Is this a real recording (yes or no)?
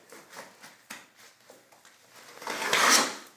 yes